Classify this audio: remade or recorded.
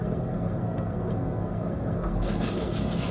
remade